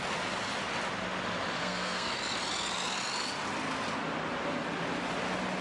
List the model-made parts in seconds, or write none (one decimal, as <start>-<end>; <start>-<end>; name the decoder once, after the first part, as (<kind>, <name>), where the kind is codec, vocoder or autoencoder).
1.6-2.1 (codec, SNAC)